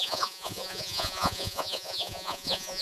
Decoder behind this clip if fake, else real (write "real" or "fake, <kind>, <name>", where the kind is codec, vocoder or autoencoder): fake, vocoder, Vocos